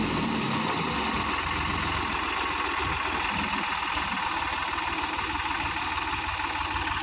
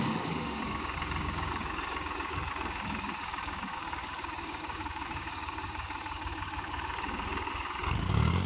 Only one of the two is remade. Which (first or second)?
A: second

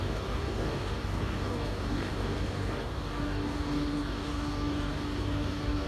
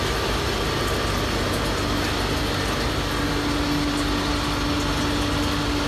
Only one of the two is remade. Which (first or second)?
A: first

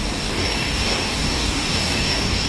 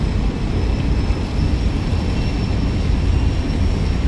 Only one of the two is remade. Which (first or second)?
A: first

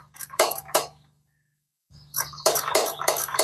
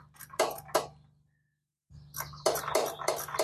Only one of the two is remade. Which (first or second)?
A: first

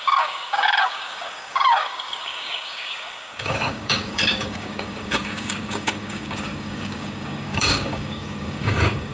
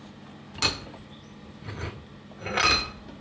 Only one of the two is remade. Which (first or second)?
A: first